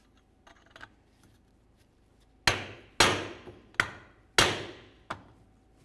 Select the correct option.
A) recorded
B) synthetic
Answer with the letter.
A